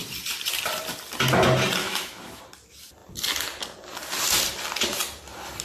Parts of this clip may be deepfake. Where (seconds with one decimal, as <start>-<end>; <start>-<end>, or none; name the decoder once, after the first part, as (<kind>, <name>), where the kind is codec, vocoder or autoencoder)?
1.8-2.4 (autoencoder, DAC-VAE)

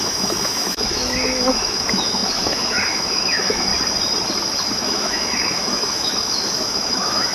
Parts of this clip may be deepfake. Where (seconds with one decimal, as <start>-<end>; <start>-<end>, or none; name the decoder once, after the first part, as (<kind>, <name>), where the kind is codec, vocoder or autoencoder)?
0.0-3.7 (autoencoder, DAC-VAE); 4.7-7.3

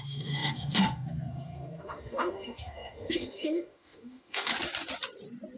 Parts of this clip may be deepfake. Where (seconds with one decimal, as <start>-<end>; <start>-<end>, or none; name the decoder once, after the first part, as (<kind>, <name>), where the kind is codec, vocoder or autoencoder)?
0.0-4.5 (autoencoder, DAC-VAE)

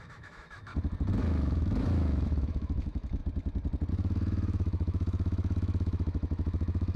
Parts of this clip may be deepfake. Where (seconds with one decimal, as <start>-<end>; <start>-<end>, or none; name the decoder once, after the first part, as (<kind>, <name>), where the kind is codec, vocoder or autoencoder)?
0.0-0.7 (autoencoder, DAC-VAE); 1.2-3.2; 3.9-7.0

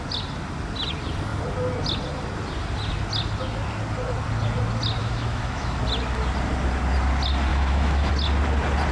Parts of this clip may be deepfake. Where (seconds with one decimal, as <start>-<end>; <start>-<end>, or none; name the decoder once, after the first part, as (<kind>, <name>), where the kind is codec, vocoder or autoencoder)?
5.0-5.8 (autoencoder, DAC-VAE); 7.5-8.1